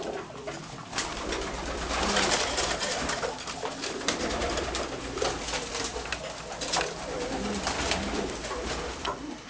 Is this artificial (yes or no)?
no